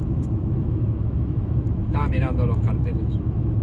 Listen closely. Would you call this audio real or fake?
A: fake